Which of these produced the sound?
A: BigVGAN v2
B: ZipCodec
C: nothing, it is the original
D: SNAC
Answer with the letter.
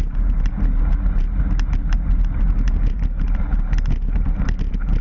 C